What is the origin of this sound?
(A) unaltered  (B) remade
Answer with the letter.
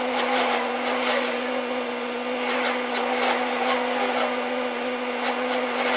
A